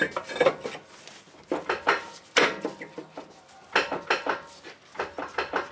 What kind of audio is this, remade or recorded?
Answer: recorded